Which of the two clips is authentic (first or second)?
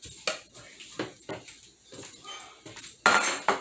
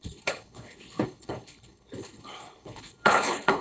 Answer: first